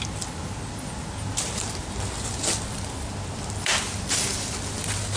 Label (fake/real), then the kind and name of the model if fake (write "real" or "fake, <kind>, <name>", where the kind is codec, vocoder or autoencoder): real